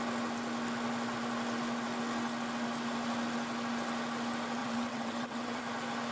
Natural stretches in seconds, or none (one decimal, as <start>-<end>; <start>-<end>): 0.0-4.6; 5.6-6.1